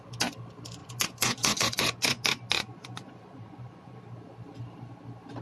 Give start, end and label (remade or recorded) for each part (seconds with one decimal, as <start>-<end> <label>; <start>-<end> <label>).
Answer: 0.0-0.8 recorded; 0.8-4.0 remade; 4.0-5.4 recorded